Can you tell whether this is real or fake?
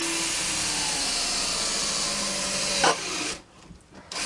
real